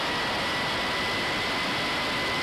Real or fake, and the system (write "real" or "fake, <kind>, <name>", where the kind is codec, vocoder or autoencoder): real